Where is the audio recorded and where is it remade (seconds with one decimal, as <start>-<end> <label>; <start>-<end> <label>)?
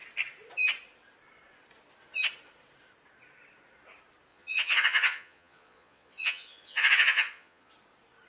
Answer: 0.0-4.3 recorded; 4.3-7.7 remade; 7.7-8.3 recorded